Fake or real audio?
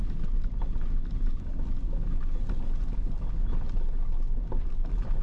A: real